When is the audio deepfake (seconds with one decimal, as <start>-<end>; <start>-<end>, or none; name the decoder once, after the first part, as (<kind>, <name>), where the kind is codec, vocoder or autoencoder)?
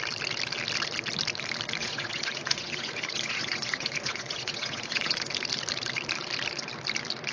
1.8-5.3 (vocoder, Vocos)